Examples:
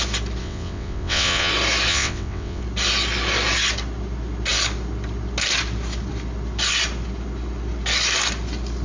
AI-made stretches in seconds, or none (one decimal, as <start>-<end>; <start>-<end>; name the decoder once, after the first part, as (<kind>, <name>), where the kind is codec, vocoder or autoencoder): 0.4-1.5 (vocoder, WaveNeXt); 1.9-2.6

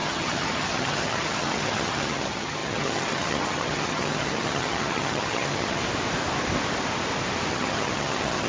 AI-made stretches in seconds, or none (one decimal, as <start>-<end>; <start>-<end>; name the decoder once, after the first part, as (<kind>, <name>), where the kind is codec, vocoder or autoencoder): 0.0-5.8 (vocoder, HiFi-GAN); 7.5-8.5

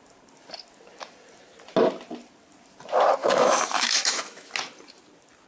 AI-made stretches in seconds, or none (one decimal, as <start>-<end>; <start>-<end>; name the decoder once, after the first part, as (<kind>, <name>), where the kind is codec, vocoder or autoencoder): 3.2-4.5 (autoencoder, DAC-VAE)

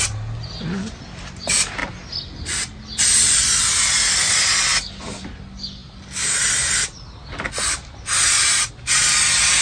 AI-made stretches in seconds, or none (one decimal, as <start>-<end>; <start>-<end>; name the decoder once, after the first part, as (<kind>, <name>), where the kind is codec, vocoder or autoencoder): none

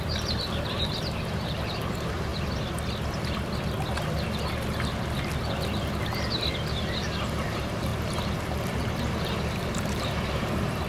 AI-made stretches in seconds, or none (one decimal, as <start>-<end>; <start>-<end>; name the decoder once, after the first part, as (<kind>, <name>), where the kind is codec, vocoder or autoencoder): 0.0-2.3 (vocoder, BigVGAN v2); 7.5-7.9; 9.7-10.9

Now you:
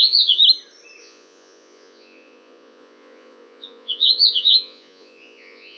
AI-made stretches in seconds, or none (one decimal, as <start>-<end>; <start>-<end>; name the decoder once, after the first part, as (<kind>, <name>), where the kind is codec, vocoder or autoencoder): 0.0-0.4 (vocoder, Vocos); 1.0-5.8

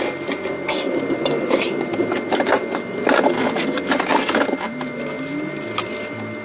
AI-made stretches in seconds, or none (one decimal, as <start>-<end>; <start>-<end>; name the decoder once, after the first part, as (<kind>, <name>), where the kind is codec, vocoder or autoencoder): none